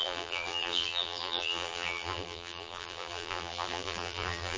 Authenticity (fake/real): fake